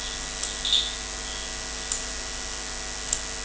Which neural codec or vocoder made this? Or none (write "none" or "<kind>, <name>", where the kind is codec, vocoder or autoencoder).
none